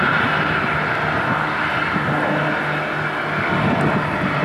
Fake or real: real